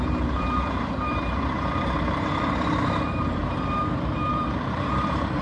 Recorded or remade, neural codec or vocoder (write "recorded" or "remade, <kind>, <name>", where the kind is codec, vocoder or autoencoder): remade, vocoder, BigVGAN v2